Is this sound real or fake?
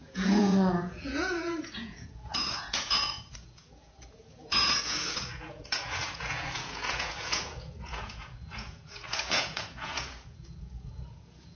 fake